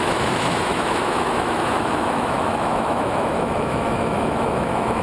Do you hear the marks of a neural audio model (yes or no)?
yes